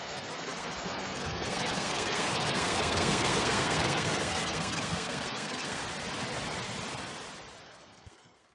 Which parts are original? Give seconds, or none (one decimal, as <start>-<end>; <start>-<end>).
5.8-7.6